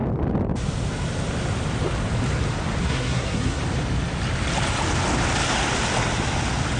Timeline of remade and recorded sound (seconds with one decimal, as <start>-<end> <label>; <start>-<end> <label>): 0.0-2.8 recorded; 2.8-3.6 remade; 3.6-6.8 recorded